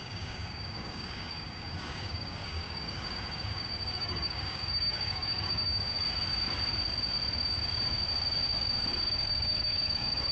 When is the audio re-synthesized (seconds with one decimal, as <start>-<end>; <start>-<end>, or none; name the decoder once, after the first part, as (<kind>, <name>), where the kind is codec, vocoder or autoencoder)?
0.0-5.7 (codec, DAC); 9.0-10.3